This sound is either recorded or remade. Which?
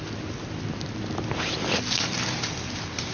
recorded